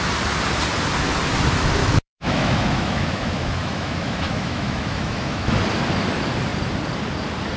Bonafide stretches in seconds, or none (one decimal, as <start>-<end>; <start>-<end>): 0.0-1.8; 5.6-7.6